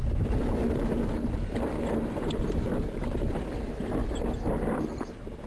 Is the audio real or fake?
real